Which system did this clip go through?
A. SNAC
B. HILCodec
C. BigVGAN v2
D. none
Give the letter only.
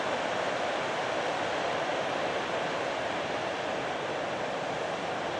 C